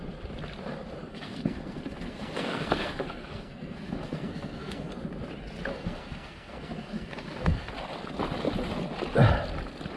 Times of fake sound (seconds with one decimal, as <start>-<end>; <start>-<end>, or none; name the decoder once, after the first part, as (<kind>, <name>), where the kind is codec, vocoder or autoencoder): 1.1-4.9 (codec, SNAC); 5.7-7.7